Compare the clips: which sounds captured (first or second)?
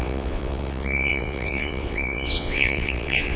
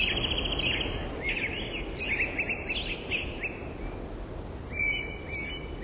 second